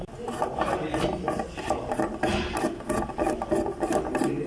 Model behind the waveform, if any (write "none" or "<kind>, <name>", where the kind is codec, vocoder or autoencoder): none